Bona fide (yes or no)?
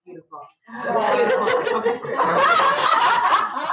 yes